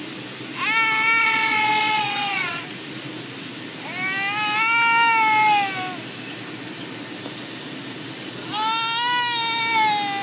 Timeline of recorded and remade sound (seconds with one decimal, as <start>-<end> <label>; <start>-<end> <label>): 0.0-1.2 recorded; 1.2-2.6 remade; 2.6-10.2 recorded